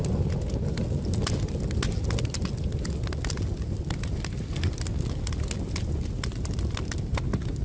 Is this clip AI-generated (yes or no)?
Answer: no